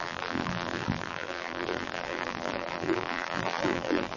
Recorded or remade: remade